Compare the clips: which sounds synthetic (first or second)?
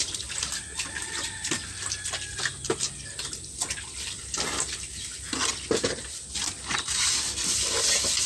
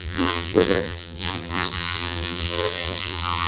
second